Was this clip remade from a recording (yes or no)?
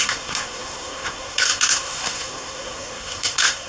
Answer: yes